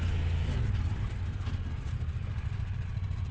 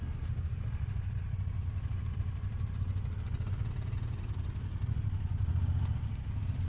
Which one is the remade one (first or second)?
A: first